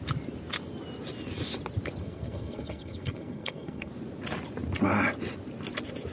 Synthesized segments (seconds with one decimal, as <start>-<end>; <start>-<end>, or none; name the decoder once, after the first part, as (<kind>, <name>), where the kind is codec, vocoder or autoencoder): 2.0-3.9 (codec, SNAC)